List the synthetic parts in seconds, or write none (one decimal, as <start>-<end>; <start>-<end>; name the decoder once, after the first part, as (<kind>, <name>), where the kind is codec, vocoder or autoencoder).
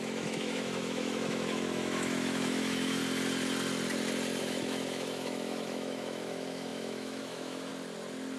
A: 0.0-3.0 (autoencoder, DAC-VAE); 4.4-7.7